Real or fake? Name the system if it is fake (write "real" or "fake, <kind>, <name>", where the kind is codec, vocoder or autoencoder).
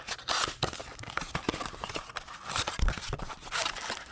real